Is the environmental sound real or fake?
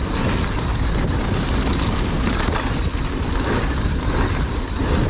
real